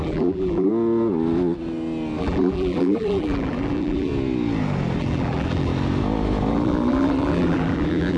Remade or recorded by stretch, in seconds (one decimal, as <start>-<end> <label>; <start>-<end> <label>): 0.0-0.7 remade; 0.7-2.2 recorded; 2.2-4.1 remade; 4.1-5.0 recorded; 5.0-5.7 remade; 5.7-6.5 recorded; 6.5-8.2 remade